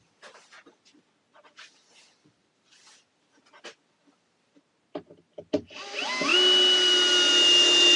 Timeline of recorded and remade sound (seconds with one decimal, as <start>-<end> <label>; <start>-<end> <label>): 0.0-8.0 recorded